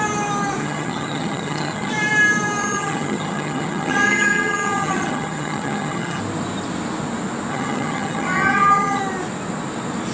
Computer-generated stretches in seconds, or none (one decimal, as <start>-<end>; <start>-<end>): 0.6-1.9; 2.6-6.2; 7.5-9.0